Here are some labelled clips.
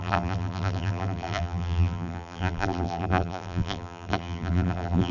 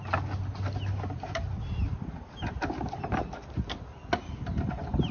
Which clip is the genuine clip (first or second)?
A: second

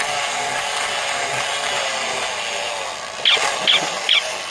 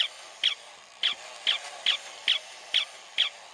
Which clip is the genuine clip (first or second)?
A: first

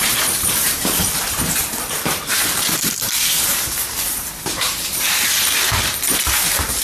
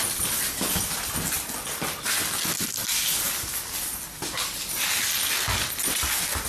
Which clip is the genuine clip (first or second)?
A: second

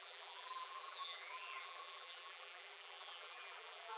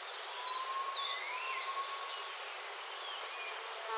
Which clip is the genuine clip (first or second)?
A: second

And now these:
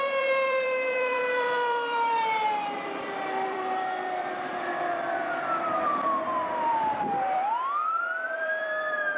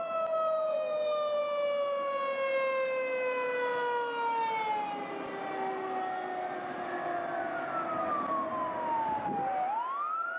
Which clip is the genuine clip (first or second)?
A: second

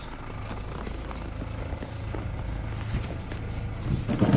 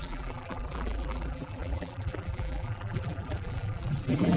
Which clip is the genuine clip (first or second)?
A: first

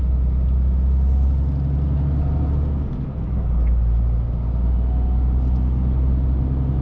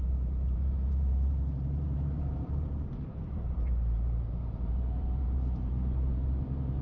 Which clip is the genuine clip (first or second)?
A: first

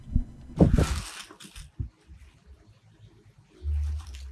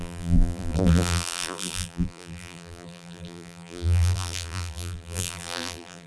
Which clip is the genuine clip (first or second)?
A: first